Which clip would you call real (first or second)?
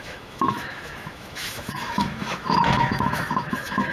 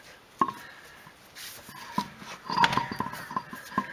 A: second